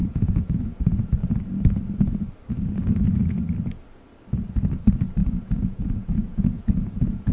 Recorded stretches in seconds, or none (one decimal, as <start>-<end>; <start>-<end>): 0.6-5.2